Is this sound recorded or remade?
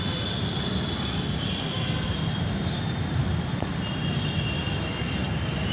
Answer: recorded